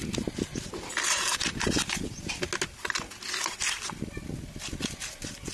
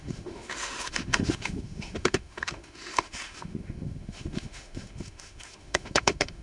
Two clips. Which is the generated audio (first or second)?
second